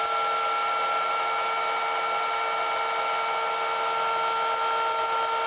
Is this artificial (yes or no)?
no